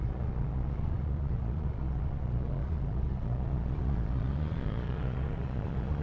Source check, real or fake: fake